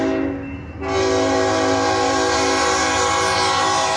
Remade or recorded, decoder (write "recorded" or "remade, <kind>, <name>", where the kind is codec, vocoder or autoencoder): recorded